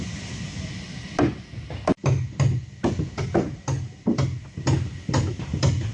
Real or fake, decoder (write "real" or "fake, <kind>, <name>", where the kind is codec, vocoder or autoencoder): real